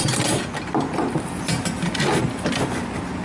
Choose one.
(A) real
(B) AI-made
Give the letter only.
A